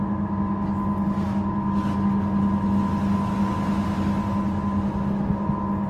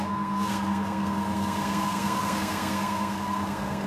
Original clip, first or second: first